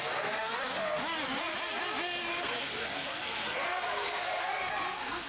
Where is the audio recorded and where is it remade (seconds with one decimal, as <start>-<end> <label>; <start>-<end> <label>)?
0.0-1.0 remade; 1.0-2.3 recorded; 2.3-5.3 remade